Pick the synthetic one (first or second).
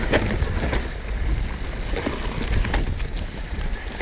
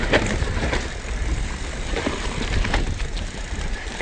second